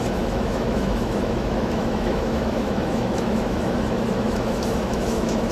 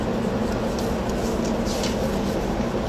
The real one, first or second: second